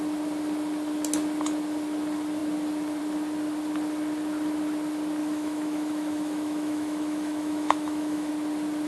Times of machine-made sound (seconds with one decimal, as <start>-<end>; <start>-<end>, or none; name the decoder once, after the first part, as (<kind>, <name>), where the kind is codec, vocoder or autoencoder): 5.2-8.3 (autoencoder, DAC-VAE)